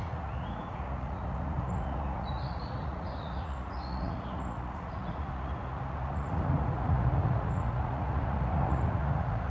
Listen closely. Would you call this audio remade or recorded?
remade